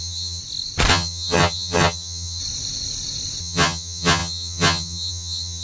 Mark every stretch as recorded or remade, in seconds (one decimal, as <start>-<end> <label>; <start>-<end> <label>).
0.0-0.4 remade; 0.4-0.9 recorded; 0.9-2.4 remade; 2.4-3.4 recorded; 3.4-5.6 remade